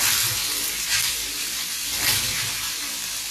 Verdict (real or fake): real